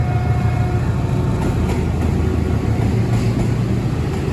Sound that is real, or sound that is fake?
real